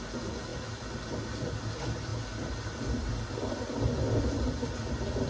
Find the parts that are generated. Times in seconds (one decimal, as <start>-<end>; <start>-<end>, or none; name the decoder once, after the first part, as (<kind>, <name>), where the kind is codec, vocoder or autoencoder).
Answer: none